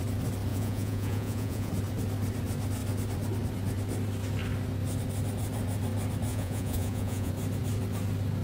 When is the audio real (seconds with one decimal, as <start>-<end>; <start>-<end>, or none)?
0.0-0.5; 1.7-6.3; 7.3-8.4